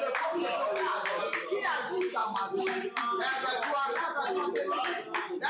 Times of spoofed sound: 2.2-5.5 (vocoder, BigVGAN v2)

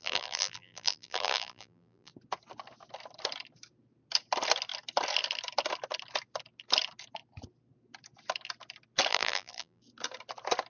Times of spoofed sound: 0.0-2.1 (vocoder, BigVGAN v2); 9.1-9.8